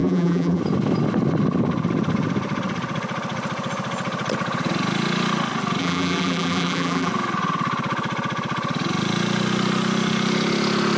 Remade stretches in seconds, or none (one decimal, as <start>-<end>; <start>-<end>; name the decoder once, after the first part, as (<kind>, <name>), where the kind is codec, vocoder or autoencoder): 0.0-0.6 (vocoder, BigVGAN v2); 5.8-7.1